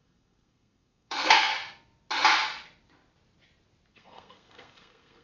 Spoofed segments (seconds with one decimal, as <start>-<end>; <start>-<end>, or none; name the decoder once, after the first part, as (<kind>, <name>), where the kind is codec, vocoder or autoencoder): 0.0-1.5 (codec, SNAC); 3.9-5.2